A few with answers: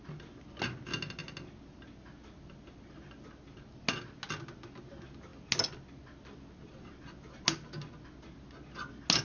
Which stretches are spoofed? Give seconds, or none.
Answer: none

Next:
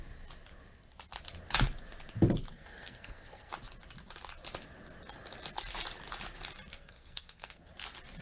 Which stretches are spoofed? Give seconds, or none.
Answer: 2.5-3.5; 6.7-7.7

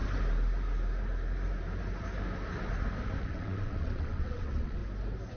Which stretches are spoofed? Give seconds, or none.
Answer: 3.2-4.8